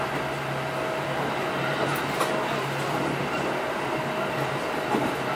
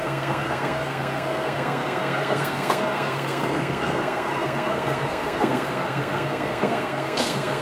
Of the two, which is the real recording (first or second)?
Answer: first